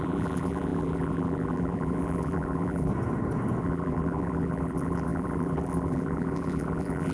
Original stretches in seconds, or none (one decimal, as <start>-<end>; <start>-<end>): 2.9-3.6